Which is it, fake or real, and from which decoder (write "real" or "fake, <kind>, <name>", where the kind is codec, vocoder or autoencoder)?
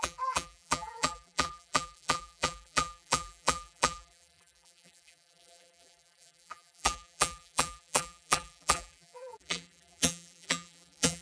fake, vocoder, BigVGAN v2